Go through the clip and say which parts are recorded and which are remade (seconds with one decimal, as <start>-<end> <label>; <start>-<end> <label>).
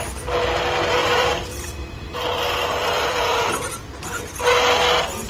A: 0.0-1.0 recorded; 1.0-4.2 remade; 4.2-5.3 recorded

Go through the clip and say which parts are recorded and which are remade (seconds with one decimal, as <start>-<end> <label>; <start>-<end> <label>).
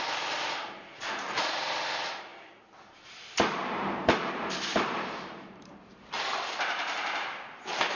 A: 0.0-8.0 remade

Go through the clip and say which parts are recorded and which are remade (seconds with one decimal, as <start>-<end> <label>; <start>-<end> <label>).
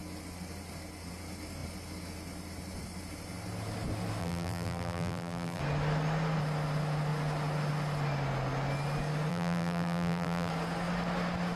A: 0.0-4.2 recorded; 4.2-5.6 remade; 5.6-9.3 recorded; 9.3-10.5 remade; 10.5-11.6 recorded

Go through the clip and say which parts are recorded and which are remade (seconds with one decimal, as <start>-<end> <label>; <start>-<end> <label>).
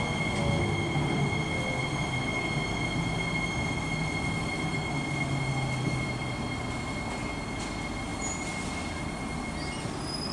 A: 0.0-10.3 recorded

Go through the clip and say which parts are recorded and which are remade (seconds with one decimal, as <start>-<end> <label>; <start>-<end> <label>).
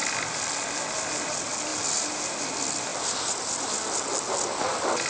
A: 0.0-2.9 recorded; 2.9-4.0 remade; 4.0-5.1 recorded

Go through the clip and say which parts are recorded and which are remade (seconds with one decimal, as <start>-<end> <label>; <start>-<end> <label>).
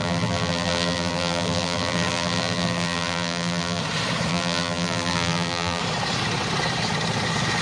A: 0.0-3.8 remade; 3.8-4.3 recorded; 4.3-5.8 remade; 5.8-7.6 recorded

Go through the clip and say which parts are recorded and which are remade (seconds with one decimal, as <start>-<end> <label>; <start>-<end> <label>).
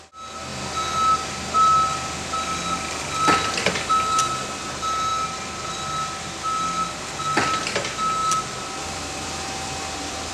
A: 0.0-8.2 recorded; 8.2-10.3 remade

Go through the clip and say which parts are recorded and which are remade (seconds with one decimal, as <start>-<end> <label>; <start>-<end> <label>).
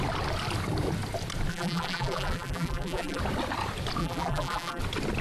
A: 0.0-1.5 recorded; 1.5-3.2 remade; 3.2-4.0 recorded; 4.0-4.8 remade; 4.8-5.2 recorded